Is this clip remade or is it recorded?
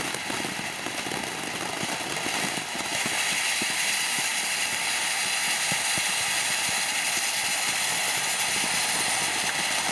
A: recorded